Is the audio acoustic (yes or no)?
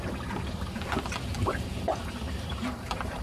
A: no